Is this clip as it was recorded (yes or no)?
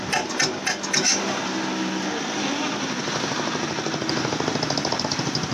yes